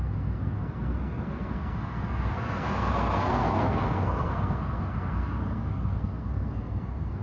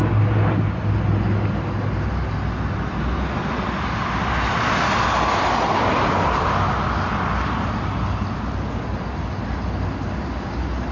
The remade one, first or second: first